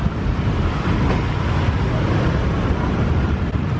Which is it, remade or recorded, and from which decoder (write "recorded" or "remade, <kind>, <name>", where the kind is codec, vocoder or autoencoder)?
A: recorded